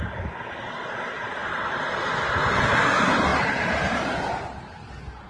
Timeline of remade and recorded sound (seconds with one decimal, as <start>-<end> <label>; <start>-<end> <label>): 0.0-5.3 recorded